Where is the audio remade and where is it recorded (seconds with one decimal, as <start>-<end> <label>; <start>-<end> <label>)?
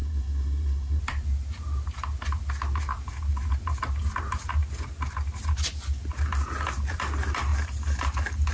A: 0.0-1.0 remade; 1.0-8.5 recorded